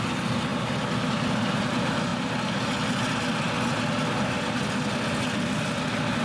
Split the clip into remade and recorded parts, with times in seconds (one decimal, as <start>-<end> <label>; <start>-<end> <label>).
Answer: 0.0-6.2 recorded